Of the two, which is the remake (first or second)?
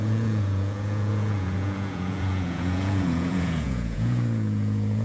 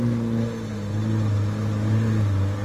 first